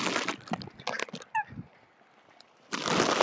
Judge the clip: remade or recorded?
recorded